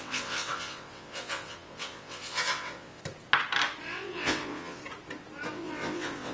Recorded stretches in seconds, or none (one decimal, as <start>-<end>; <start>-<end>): 3.0-3.8; 4.8-5.5

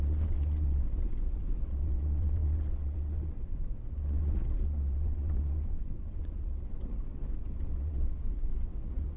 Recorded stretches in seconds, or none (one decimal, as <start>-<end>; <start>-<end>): none